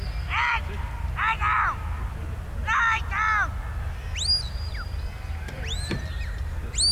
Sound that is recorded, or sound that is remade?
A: recorded